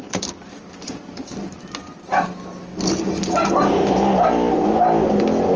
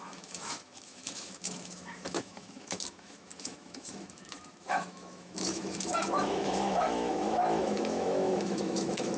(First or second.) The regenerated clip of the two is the second